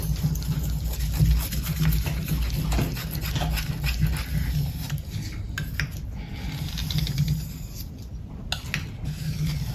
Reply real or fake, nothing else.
real